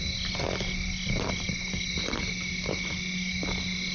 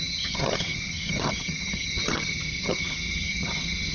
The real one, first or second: first